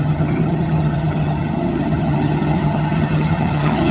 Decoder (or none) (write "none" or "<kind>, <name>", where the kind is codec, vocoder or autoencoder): vocoder, HiFi-GAN